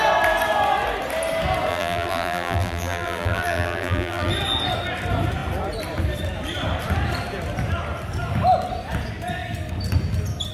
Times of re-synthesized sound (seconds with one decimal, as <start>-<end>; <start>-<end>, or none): 1.7-4.3